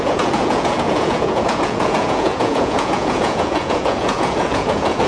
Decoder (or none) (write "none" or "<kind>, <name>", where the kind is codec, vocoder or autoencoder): vocoder, Vocos